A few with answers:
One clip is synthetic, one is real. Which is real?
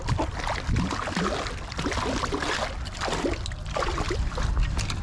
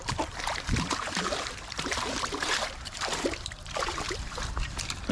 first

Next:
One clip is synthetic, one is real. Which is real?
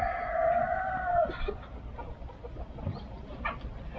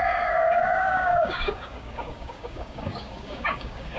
first